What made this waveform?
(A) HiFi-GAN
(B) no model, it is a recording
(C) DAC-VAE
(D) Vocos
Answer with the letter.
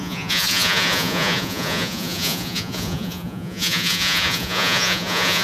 D